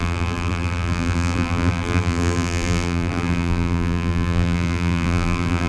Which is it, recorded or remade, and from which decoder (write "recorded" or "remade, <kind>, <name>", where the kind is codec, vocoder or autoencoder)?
remade, vocoder, BigVGAN v2